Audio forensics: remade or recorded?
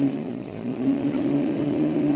remade